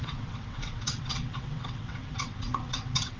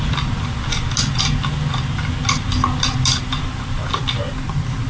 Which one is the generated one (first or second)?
first